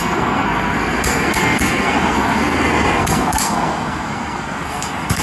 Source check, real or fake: fake